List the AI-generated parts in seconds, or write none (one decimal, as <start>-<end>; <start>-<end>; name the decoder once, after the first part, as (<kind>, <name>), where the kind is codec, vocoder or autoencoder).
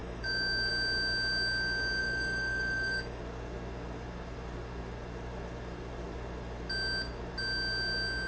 0.0-0.7 (autoencoder, DAC-VAE); 2.0-3.2